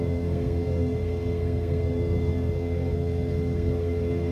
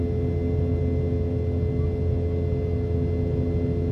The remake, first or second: first